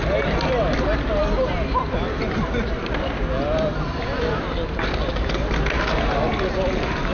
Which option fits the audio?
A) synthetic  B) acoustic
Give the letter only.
B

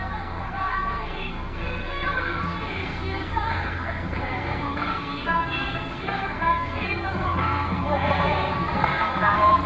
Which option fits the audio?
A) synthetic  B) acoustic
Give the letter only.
A